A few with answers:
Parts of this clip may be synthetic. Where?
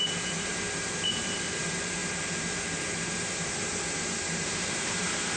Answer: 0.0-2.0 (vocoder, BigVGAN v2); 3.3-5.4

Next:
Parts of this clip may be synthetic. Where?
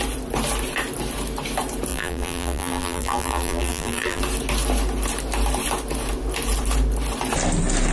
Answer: 1.9-4.2 (vocoder, BigVGAN v2)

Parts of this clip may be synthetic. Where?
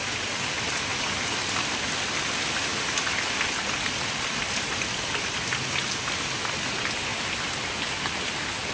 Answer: 0.9-2.3 (vocoder, BigVGAN v2)